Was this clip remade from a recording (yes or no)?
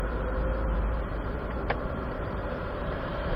yes